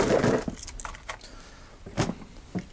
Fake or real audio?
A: real